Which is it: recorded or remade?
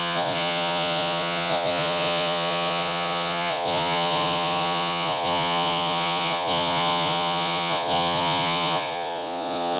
remade